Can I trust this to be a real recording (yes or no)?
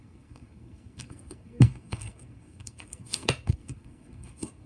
no